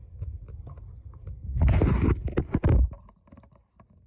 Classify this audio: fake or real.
real